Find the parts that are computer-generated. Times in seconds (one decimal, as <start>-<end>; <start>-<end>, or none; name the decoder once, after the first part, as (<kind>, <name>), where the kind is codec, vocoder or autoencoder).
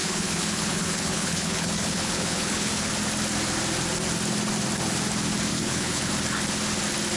0.0-2.9 (codec, HILCodec); 5.5-6.1